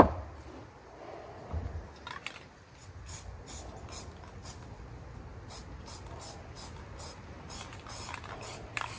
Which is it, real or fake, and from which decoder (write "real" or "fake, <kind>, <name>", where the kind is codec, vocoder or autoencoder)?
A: real